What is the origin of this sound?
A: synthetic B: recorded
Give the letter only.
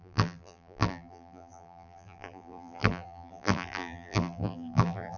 A